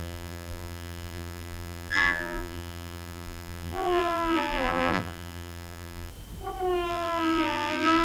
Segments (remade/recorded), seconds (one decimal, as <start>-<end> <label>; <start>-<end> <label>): 0.0-6.1 remade; 6.1-6.9 recorded; 6.9-8.0 remade